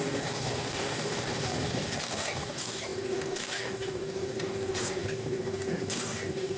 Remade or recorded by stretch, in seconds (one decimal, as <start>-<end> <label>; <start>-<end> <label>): 0.0-6.6 remade